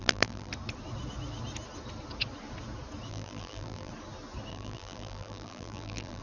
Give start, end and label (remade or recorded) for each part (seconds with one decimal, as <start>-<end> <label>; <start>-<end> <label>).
0.0-0.5 remade; 0.5-3.1 recorded; 3.1-3.9 remade; 3.9-4.5 recorded; 4.5-6.2 remade